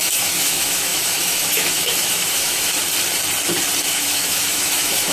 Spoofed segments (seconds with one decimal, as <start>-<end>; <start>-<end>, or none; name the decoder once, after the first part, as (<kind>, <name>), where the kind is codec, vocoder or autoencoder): 0.0-2.7 (autoencoder, DAC-VAE); 3.8-5.1